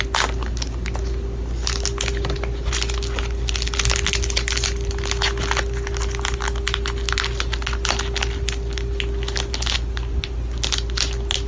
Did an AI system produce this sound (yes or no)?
no